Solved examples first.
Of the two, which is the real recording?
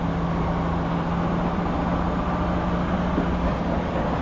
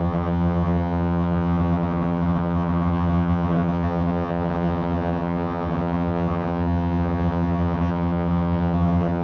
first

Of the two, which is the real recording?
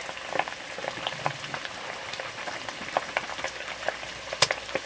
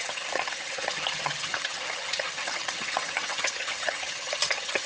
first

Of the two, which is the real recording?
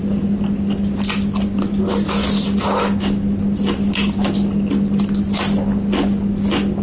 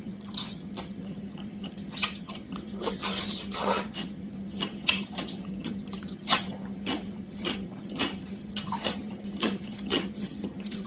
first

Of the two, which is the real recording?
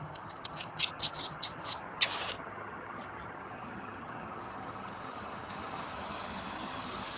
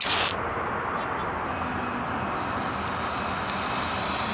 second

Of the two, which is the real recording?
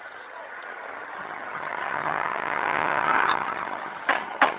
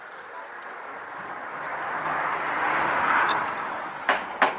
second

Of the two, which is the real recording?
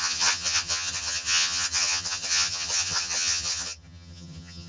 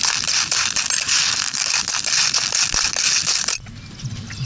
second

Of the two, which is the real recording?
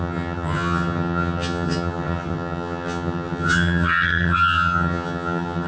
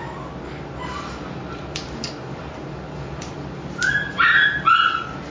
second